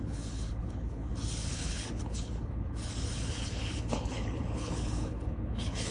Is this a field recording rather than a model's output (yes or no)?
no